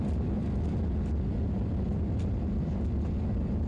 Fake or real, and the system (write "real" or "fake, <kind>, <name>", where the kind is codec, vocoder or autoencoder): real